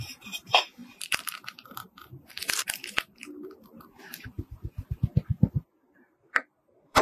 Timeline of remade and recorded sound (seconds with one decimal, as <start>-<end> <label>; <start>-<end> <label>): 0.0-7.0 remade